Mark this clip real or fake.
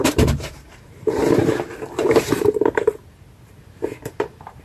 fake